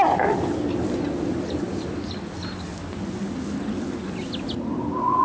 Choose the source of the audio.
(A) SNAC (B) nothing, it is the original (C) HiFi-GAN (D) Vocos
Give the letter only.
B